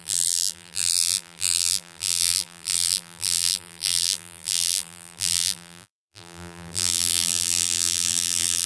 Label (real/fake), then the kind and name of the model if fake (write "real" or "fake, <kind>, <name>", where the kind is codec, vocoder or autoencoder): fake, vocoder, BigVGAN v2